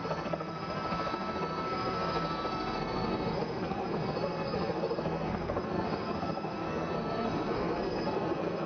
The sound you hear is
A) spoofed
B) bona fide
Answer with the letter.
A